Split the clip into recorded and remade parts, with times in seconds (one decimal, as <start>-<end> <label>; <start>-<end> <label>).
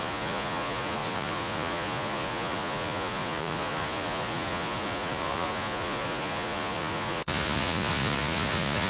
0.0-8.9 remade